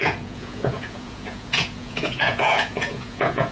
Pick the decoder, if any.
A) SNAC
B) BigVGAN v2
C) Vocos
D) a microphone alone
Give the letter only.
C